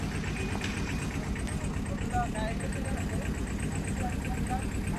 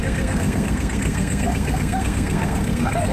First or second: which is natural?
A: first